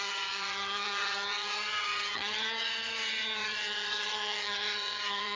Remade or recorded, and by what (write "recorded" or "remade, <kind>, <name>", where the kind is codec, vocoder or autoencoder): remade, vocoder, HiFi-GAN